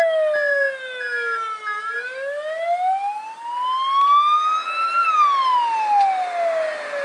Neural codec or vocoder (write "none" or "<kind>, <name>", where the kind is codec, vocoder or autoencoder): none